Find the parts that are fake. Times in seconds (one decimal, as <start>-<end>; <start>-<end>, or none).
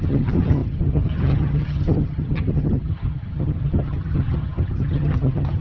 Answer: 0.0-5.6